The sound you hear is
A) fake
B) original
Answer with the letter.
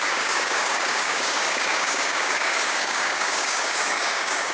A